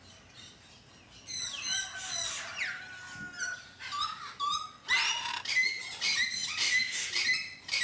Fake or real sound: real